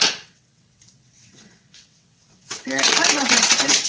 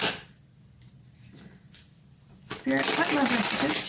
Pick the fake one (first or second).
first